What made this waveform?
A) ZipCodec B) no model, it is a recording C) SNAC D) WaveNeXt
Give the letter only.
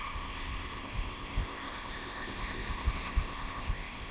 A